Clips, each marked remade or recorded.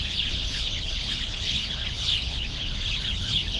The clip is remade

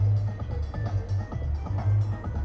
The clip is recorded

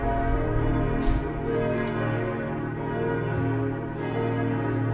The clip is recorded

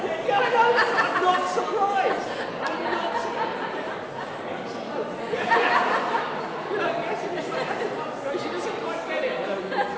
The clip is recorded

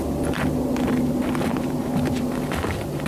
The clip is recorded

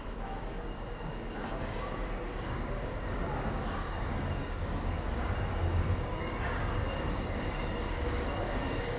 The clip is remade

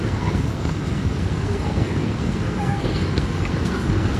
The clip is remade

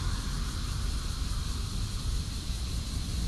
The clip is recorded